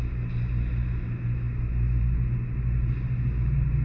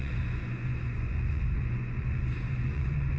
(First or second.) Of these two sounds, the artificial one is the second